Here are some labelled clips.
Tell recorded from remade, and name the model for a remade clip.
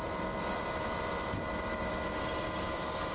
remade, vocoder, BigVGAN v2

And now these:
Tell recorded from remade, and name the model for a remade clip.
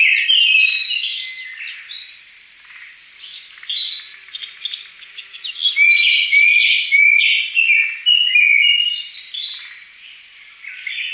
recorded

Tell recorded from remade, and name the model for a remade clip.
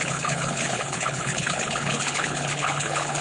remade, codec, HILCodec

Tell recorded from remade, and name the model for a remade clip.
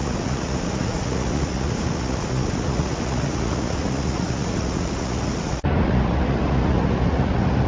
remade, vocoder, Vocos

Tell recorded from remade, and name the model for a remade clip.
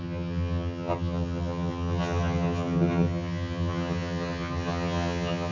remade, vocoder, HiFi-GAN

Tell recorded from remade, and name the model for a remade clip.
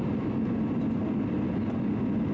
recorded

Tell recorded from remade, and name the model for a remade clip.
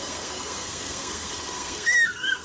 remade, codec, SNAC